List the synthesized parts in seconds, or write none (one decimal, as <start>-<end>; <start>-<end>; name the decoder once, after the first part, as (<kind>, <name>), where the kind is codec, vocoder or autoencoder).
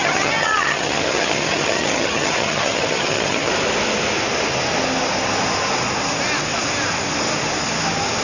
0.0-3.5 (vocoder, HiFi-GAN)